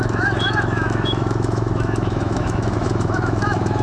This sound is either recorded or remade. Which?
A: remade